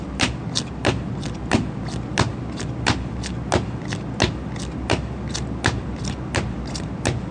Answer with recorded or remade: recorded